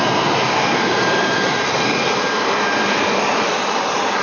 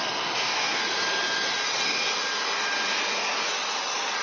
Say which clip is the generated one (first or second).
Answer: first